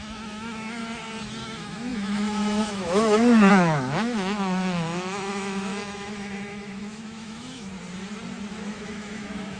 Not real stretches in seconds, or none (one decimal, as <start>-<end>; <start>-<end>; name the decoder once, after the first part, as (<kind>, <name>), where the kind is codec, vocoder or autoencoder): 0.0-0.8 (autoencoder, DAC-VAE); 1.4-7.7; 8.5-9.6